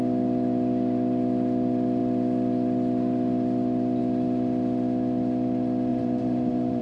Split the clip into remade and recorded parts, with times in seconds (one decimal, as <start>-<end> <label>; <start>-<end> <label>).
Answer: 0.0-5.9 recorded; 5.9-6.8 remade